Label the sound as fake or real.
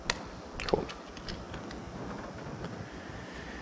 real